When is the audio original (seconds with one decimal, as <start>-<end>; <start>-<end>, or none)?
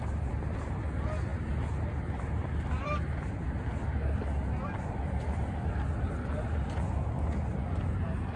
0.0-8.4